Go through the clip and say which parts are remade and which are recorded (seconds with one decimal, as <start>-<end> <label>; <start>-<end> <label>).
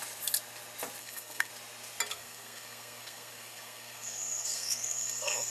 0.0-1.0 recorded; 1.0-1.5 remade; 1.5-2.1 recorded; 2.1-5.5 remade